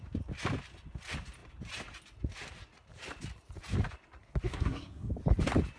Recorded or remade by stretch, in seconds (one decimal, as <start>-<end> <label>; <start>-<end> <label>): 0.0-4.5 recorded; 4.5-5.1 remade; 5.1-5.8 recorded